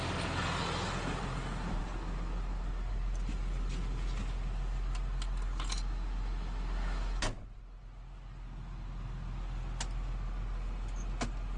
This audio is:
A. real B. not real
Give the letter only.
A